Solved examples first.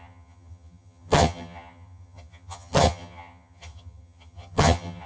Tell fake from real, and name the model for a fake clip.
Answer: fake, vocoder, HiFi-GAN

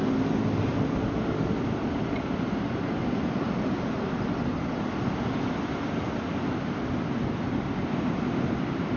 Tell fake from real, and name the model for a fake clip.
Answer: real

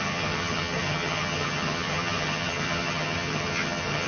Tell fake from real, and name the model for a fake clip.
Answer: fake, vocoder, HiFi-GAN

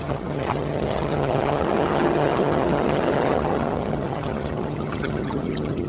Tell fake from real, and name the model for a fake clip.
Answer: fake, vocoder, HiFi-GAN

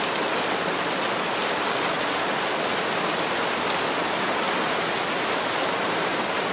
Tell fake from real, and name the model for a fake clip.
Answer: real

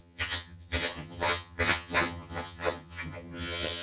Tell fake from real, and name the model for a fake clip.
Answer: fake, vocoder, HiFi-GAN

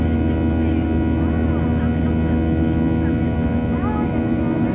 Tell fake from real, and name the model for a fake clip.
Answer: real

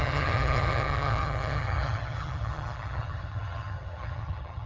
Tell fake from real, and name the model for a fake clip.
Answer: fake, vocoder, HiFi-GAN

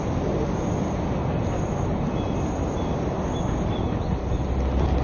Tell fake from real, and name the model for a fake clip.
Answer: real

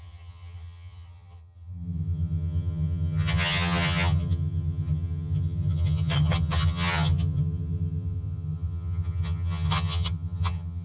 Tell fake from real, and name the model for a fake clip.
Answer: fake, vocoder, HiFi-GAN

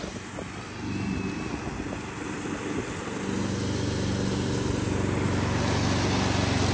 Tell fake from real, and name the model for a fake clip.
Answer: real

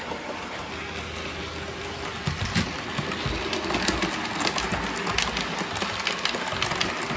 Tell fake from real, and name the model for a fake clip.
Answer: real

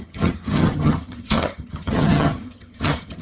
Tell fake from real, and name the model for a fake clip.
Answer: fake, vocoder, HiFi-GAN